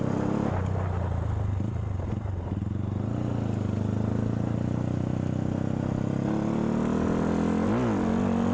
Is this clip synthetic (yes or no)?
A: no